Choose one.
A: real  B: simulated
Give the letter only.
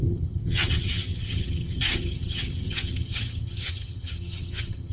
B